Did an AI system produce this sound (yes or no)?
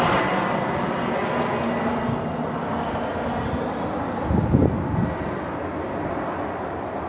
no